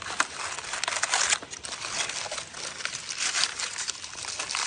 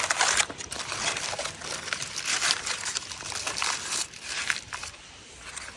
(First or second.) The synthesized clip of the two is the second